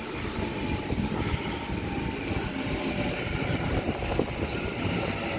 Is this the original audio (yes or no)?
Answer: yes